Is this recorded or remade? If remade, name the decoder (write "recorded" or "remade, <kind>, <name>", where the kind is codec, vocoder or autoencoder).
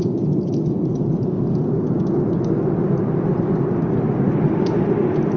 recorded